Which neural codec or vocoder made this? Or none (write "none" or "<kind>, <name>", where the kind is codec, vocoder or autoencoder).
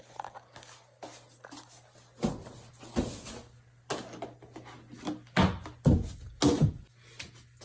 none